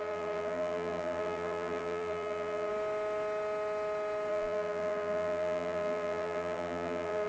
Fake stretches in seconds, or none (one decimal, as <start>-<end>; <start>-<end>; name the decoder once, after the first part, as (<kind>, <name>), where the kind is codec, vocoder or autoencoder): 0.0-2.7 (vocoder, BigVGAN v2); 4.3-7.3